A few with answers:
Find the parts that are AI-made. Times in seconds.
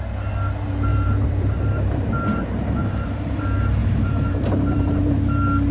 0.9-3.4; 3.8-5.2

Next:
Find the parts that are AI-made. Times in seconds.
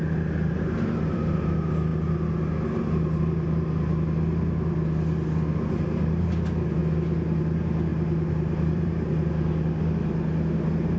6.8-7.4; 7.9-9.3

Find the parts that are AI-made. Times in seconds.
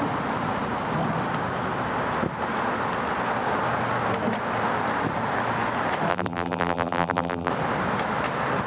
6.1-7.5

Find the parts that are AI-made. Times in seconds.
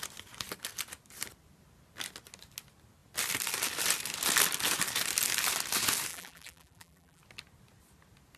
6.1-7.2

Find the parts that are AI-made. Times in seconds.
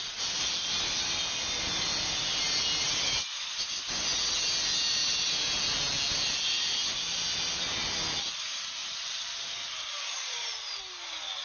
8.8-10.8